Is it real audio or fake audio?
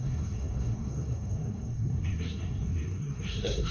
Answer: fake